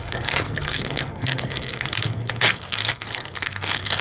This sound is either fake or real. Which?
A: fake